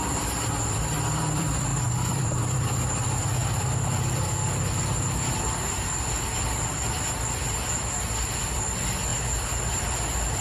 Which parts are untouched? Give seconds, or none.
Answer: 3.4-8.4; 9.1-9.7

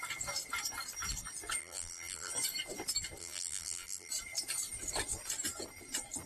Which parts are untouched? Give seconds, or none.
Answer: 0.0-1.6; 2.3-3.2; 4.1-6.3

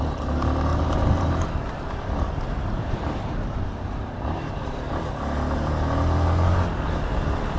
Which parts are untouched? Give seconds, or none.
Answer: 0.0-0.7; 5.2-7.6

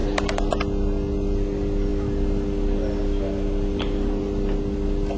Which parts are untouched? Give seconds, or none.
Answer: 0.0-5.2